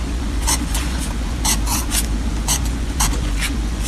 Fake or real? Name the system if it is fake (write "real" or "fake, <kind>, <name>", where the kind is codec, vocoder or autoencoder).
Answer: fake, vocoder, Vocos